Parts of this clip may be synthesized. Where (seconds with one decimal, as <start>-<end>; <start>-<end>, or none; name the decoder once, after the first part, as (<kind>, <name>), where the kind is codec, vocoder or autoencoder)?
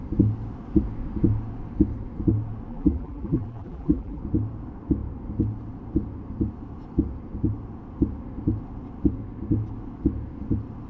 2.7-4.2 (vocoder, BigVGAN v2)